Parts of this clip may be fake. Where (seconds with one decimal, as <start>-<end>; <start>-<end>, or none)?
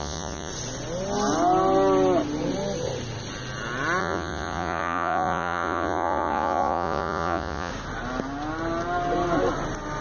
0.0-0.5; 4.0-7.7